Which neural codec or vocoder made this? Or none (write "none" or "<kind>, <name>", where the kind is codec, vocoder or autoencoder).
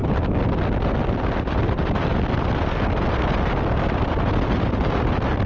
none